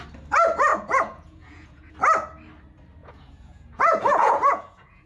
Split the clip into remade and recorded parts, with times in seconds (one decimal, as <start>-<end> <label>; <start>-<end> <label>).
0.0-0.7 recorded; 0.7-1.9 remade; 1.9-3.0 recorded; 3.0-5.1 remade